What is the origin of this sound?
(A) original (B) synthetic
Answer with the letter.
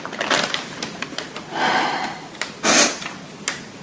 A